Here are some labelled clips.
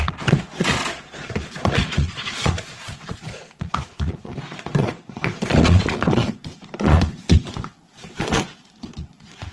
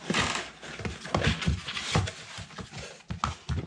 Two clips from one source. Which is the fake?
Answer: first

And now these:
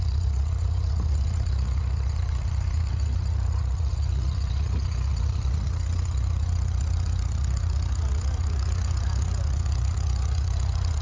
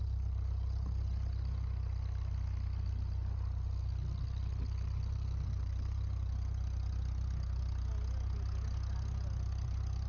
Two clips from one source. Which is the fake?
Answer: first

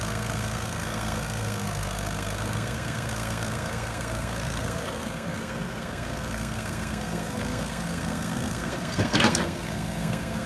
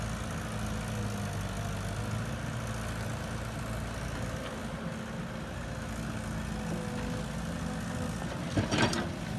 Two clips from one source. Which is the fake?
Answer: first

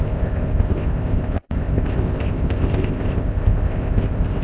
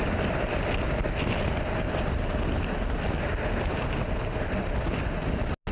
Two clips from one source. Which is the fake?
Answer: first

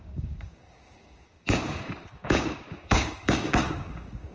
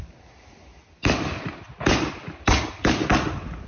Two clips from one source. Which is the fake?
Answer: first